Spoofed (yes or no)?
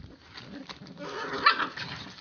no